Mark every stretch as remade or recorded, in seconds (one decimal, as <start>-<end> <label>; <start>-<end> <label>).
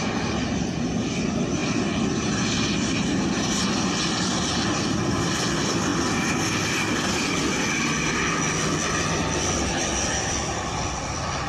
0.0-11.5 recorded